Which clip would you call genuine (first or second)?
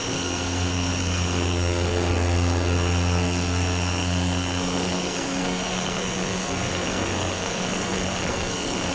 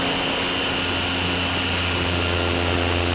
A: second